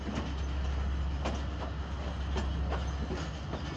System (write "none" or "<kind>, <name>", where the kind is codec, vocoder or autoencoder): none